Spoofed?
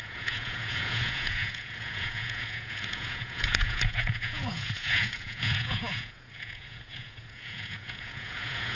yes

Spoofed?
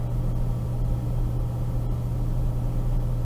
no